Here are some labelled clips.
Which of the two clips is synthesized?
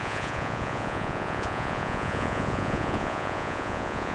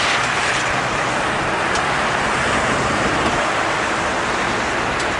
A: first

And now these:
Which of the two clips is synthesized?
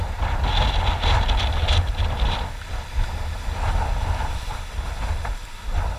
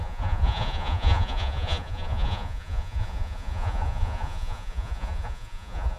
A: second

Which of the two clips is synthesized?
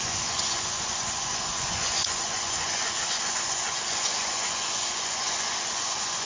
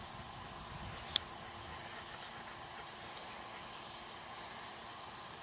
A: first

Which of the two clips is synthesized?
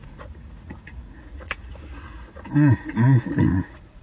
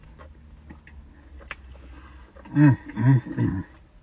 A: first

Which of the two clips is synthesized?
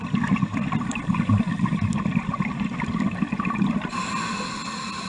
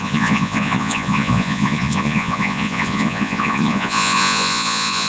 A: second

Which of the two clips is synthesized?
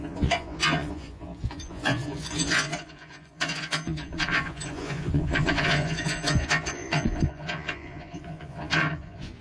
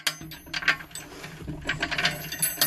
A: first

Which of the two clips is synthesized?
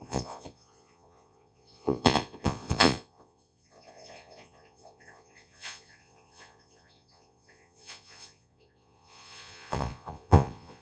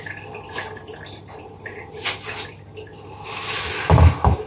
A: first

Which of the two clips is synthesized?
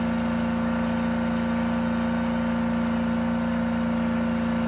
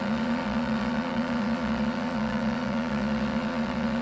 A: second